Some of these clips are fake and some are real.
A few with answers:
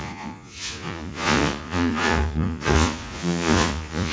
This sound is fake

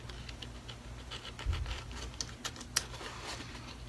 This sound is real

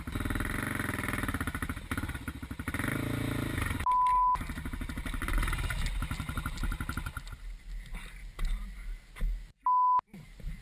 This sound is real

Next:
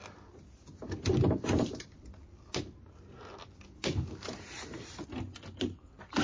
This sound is real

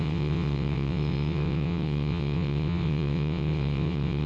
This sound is fake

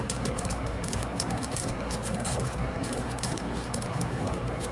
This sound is fake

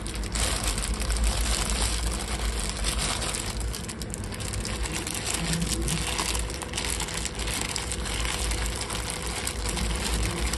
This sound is real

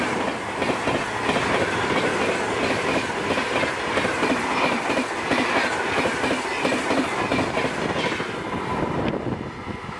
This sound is real